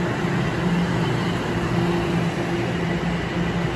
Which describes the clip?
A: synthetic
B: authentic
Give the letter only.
B